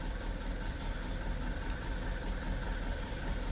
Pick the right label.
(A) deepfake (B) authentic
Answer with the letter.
A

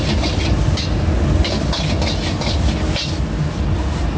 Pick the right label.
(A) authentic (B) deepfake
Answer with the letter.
A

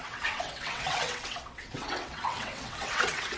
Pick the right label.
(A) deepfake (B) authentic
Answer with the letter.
A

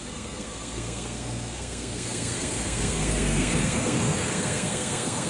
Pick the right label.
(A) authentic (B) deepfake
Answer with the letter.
B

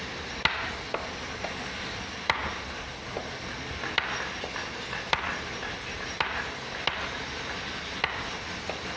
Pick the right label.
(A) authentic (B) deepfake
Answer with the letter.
A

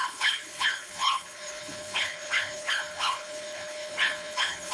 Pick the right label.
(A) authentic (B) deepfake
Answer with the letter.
B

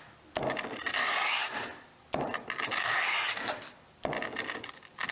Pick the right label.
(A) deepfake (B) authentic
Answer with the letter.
B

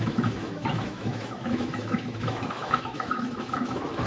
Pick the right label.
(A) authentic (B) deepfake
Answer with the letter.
B